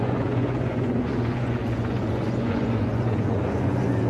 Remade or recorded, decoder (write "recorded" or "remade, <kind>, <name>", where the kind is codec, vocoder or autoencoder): remade, vocoder, Vocos